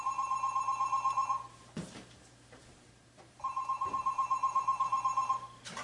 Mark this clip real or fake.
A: fake